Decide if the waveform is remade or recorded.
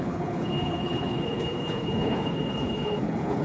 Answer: remade